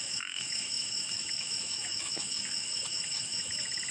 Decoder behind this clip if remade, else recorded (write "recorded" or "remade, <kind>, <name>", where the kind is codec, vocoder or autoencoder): remade, autoencoder, DAC-VAE